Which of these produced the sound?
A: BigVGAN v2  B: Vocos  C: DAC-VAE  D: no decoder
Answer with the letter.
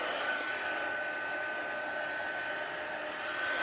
D